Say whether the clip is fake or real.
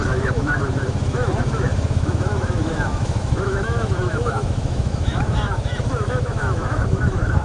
fake